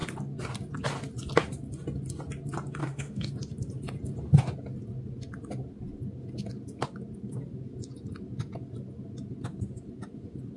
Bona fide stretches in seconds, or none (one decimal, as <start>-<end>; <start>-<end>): 0.0-2.8; 3.3-10.6